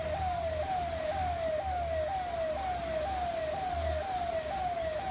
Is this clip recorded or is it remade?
recorded